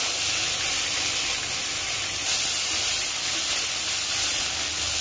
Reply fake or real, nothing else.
real